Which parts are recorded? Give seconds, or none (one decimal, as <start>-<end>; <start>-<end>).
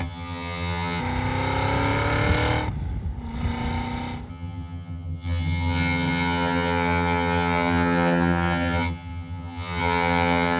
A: 1.0-4.3